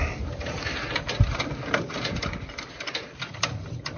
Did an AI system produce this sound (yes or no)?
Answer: no